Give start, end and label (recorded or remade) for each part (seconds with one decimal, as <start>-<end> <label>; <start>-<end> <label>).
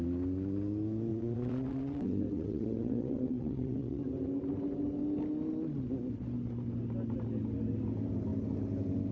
0.0-1.1 recorded; 1.1-4.0 remade; 4.0-9.1 recorded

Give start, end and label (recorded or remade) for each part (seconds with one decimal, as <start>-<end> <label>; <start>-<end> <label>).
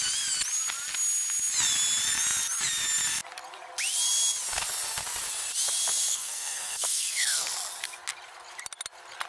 0.0-6.1 recorded; 6.1-7.5 remade; 7.5-9.3 recorded